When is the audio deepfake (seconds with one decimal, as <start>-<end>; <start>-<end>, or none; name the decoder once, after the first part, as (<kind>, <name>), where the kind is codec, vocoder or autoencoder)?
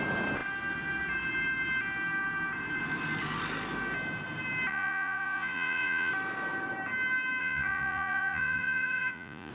4.7-6.1 (vocoder, Vocos); 7.4-9.5